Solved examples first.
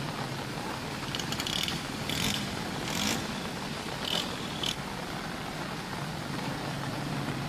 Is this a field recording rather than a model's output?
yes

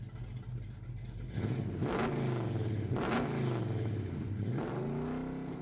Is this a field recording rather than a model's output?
yes